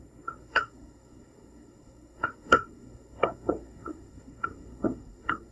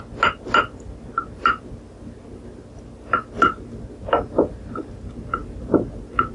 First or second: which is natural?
second